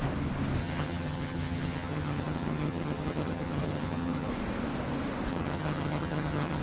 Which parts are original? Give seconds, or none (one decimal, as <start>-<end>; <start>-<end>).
0.0-0.6; 4.3-5.3